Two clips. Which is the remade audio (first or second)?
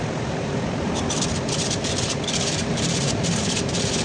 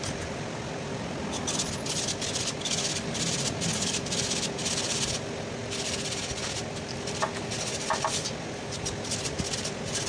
first